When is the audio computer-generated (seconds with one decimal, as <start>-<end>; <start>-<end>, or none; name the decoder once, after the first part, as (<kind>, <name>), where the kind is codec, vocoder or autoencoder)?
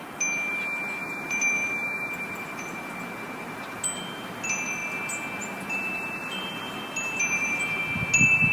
1.0-1.9 (vocoder, BigVGAN v2); 6.2-6.8; 7.2-7.8